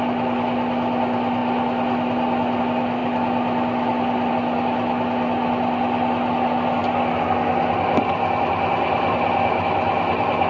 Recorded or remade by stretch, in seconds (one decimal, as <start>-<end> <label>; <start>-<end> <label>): 0.0-10.5 recorded